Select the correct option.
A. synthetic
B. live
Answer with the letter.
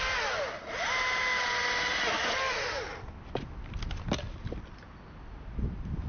B